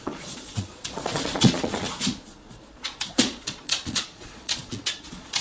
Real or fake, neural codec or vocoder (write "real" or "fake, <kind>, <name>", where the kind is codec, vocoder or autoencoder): fake, vocoder, Vocos